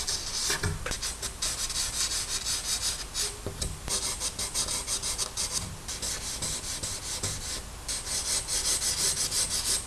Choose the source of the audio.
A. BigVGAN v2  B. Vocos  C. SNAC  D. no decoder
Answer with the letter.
D